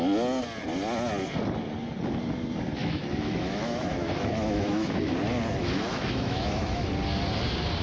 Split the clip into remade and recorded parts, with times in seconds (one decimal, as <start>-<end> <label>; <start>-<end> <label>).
0.0-2.8 recorded; 2.8-5.1 remade; 5.1-5.6 recorded; 5.6-6.9 remade; 6.9-7.8 recorded